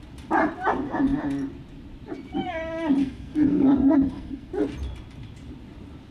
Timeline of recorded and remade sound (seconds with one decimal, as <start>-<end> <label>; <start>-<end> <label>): 0.0-3.0 recorded; 3.0-4.5 remade; 4.5-6.1 recorded